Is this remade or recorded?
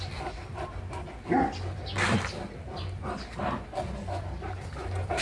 recorded